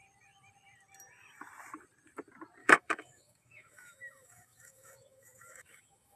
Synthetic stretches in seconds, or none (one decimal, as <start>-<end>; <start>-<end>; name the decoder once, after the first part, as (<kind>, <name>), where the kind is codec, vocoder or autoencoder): 2.6-6.2 (autoencoder, DAC-VAE)